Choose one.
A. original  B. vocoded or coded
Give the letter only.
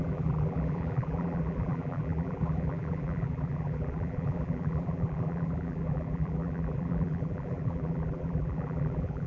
B